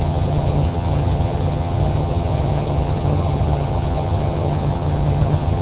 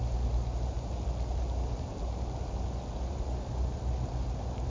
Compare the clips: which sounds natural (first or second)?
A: second